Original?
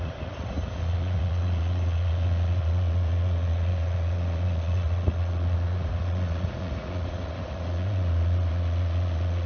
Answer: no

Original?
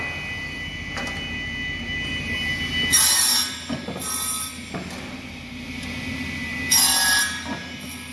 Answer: yes